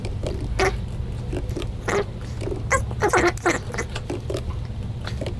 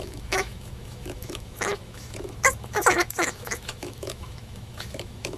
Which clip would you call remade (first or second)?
second